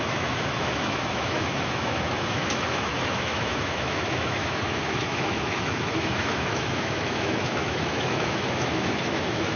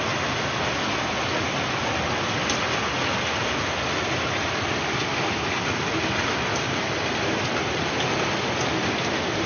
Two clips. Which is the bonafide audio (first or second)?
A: second